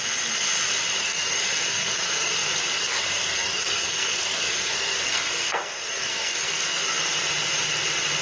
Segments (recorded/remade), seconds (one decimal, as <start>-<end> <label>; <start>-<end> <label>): 0.0-1.0 recorded; 1.0-2.3 remade; 2.3-2.8 recorded; 2.8-6.8 remade; 6.8-8.2 recorded